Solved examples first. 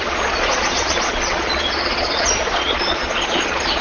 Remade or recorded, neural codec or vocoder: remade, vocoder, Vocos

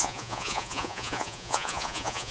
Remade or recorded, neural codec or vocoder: remade, vocoder, Vocos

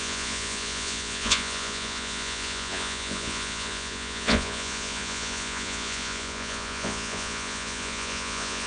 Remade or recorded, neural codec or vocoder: remade, vocoder, Vocos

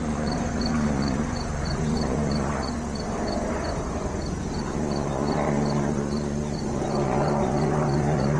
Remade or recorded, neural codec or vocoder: remade, vocoder, Vocos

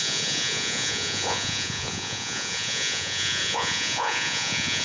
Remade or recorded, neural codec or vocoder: remade, vocoder, Vocos